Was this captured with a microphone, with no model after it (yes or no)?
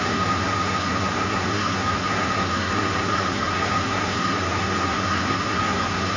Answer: no